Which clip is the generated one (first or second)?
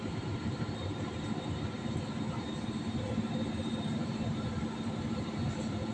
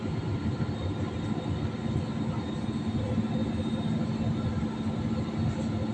first